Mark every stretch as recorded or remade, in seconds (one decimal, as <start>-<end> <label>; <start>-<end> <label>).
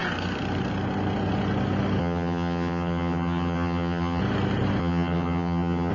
0.0-2.0 recorded; 2.0-4.2 remade; 4.2-4.8 recorded; 4.8-5.9 remade